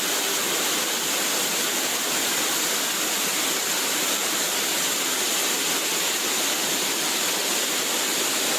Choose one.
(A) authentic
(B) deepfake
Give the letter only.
A